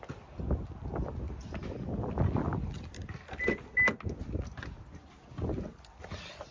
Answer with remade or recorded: recorded